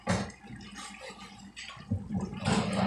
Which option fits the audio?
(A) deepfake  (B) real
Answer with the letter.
A